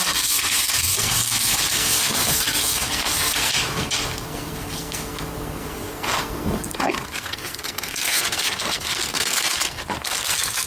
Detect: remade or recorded remade